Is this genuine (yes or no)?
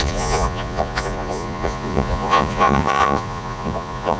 no